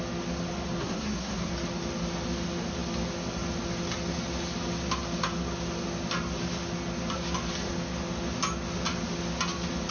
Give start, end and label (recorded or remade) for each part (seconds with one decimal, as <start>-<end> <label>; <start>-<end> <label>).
0.0-0.8 recorded; 0.8-1.5 remade; 1.5-9.9 recorded